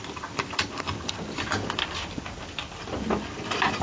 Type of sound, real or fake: fake